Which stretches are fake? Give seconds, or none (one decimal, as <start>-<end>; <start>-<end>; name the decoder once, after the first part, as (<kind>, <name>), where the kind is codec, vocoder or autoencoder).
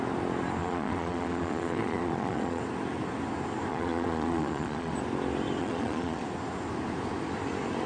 0.6-2.6 (vocoder, Vocos); 3.7-4.9; 5.6-6.2